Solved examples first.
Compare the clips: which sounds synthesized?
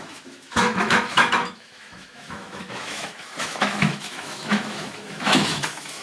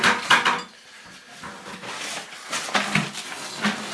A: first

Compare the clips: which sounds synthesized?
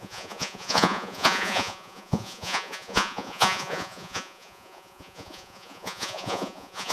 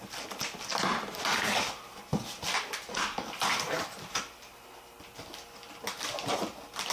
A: first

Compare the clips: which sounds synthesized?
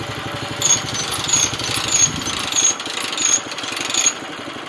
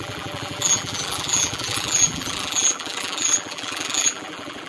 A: second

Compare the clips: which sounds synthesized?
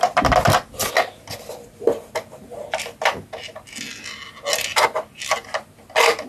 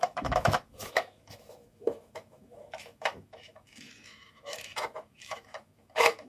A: second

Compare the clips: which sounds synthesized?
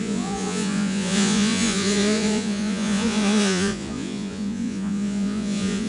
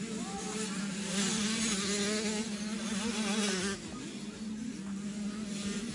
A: first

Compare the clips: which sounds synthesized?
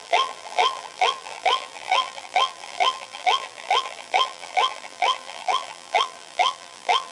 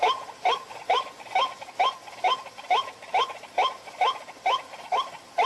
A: first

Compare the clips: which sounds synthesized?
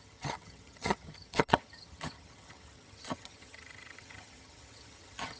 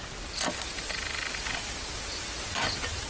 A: first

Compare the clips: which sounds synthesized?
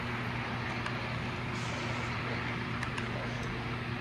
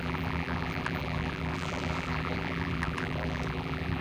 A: second